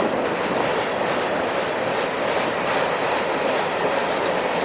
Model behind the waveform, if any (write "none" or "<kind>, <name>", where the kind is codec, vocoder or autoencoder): none